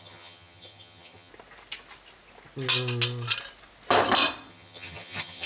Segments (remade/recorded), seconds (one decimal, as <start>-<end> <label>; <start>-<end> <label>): 0.0-1.3 remade; 1.3-4.5 recorded; 4.5-5.5 remade